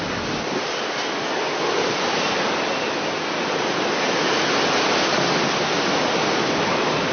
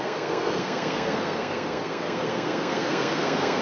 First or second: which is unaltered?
first